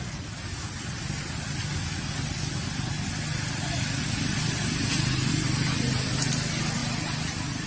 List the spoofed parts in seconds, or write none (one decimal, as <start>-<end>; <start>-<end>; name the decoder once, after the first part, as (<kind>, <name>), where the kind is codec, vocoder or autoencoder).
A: none